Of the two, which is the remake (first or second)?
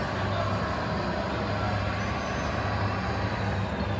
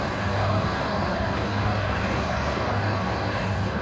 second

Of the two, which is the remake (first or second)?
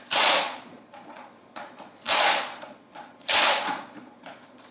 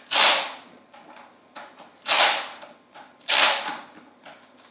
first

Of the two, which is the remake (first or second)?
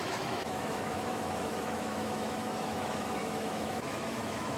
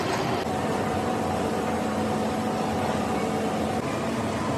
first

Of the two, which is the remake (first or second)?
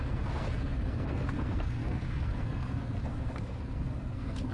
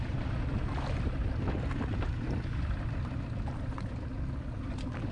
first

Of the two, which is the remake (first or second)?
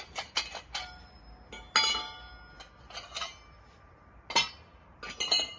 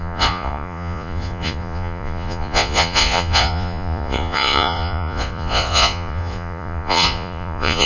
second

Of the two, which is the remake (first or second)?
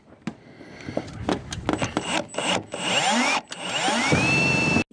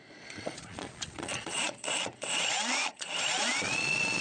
second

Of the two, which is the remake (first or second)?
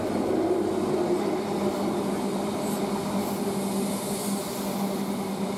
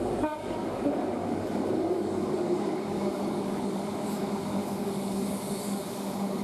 second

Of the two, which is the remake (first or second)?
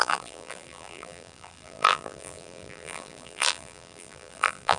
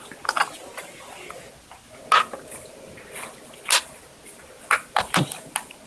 first